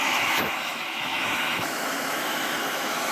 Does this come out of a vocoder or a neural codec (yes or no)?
yes